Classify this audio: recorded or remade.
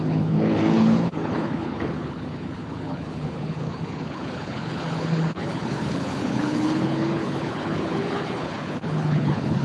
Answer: remade